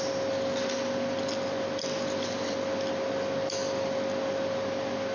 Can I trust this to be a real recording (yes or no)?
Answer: yes